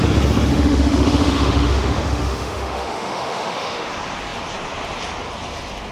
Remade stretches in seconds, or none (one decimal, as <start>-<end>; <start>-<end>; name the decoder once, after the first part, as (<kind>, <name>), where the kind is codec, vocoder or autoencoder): 0.5-3.9 (autoencoder, DAC-VAE)